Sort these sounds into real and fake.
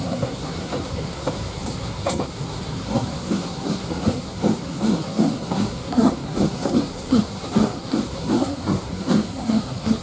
fake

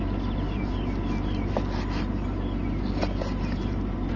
real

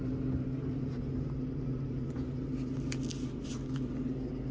real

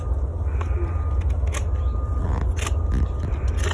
real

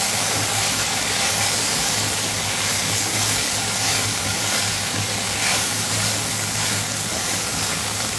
fake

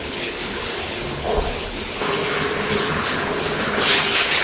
fake